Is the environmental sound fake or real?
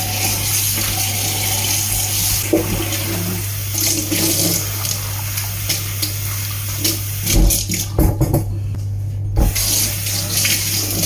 real